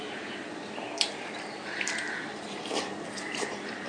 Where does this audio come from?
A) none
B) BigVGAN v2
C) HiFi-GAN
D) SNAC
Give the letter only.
B